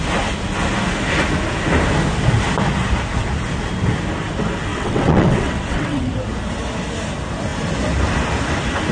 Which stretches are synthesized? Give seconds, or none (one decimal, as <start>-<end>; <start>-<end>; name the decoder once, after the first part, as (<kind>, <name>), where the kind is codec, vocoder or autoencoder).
4.7-6.1 (vocoder, WaveNeXt)